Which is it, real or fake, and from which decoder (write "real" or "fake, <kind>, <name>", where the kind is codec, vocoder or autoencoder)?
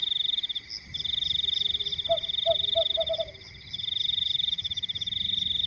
real